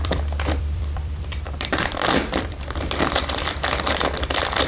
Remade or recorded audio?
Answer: remade